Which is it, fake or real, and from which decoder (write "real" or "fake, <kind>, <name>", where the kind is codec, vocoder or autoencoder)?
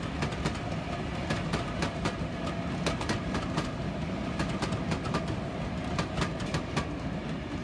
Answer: real